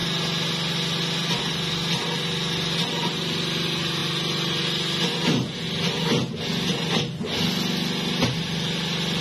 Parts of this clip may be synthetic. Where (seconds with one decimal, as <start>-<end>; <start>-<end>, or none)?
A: none